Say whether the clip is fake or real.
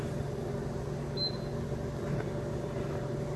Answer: real